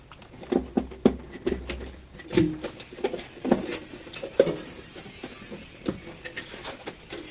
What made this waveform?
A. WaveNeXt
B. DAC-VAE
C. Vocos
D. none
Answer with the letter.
D